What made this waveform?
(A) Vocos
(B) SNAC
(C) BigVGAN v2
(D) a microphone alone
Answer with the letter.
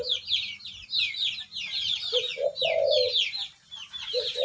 D